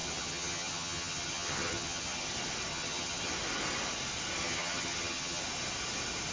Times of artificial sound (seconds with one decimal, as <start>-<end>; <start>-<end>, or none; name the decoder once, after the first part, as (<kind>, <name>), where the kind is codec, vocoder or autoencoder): 0.0-2.3 (vocoder, HiFi-GAN); 2.7-3.3; 4.4-5.4